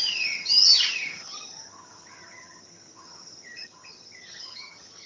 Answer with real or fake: fake